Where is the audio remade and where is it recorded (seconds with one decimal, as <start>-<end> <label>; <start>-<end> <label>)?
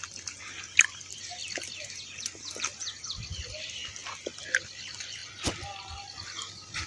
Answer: 0.0-6.9 recorded